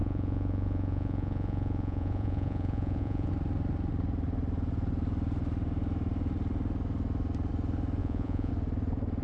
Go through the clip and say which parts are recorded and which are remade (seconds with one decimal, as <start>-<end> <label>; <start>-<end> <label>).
0.0-3.3 remade; 3.3-8.0 recorded; 8.0-8.5 remade; 8.5-9.2 recorded